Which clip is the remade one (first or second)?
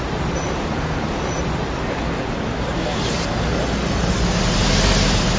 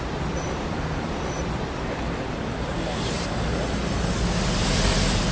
second